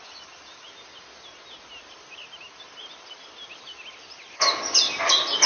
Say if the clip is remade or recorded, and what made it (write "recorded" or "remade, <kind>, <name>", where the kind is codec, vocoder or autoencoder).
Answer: recorded